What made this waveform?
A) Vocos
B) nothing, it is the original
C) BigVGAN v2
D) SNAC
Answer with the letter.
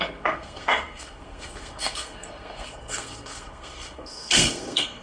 D